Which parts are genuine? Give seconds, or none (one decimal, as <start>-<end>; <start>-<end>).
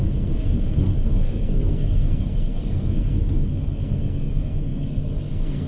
none